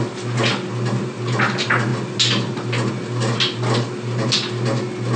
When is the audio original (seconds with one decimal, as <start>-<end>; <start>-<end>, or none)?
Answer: 0.0-5.2